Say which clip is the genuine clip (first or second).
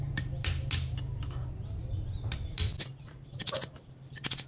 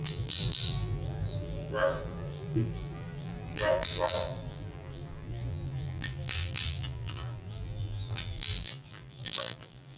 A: first